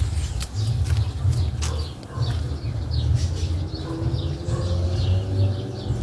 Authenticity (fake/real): real